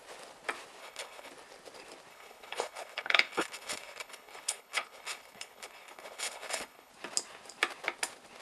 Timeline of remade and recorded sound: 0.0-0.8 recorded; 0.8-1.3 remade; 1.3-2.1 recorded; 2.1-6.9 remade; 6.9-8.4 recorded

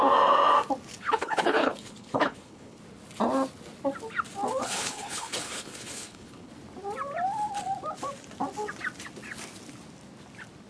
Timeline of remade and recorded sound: 0.0-1.0 recorded; 1.0-2.8 remade; 2.8-4.6 recorded; 4.6-6.5 remade; 6.5-10.7 recorded

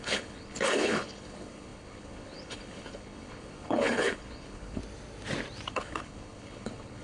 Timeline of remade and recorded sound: 0.0-4.8 remade; 4.8-5.7 recorded; 5.7-7.0 remade

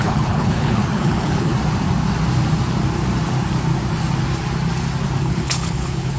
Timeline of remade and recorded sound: 0.0-1.5 remade; 1.5-5.2 recorded; 5.2-6.2 remade

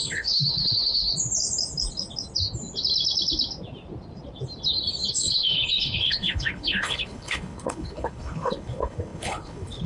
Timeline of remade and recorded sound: 0.0-1.1 remade; 1.1-5.1 recorded; 5.1-9.9 remade